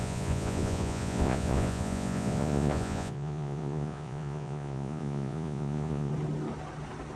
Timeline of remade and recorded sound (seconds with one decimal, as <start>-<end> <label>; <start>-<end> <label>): 0.0-6.1 remade; 6.1-7.2 recorded